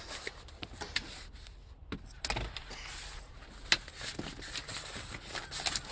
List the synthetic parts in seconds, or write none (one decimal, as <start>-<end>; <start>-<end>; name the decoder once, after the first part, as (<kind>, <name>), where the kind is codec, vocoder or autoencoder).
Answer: none

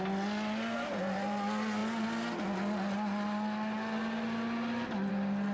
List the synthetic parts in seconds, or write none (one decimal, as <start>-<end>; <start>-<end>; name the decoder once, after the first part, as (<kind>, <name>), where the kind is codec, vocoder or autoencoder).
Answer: none

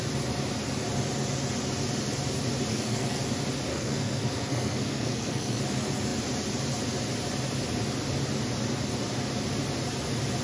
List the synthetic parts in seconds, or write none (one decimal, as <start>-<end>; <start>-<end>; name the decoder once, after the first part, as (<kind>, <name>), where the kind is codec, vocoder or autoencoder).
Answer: 2.7-3.2 (codec, SNAC); 3.7-5.6

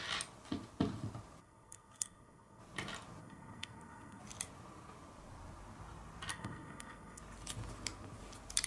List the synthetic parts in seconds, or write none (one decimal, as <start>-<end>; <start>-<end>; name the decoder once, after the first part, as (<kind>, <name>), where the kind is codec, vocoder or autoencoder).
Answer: 1.4-2.6 (codec, SNAC); 3.2-4.2; 6.3-7.2

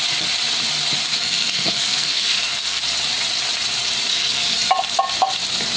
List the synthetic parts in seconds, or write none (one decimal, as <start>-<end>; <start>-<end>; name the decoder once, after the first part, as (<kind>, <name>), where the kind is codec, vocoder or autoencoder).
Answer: 1.1-2.8 (codec, SNAC); 4.1-4.7

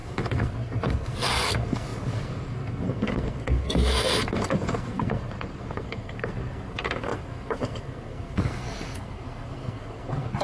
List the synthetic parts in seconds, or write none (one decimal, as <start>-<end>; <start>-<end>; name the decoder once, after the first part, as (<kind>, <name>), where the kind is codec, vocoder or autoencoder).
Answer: 0.0-10.4 (codec, SNAC)

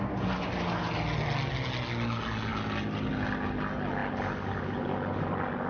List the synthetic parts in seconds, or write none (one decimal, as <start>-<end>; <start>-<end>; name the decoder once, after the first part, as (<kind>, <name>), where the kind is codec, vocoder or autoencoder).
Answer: none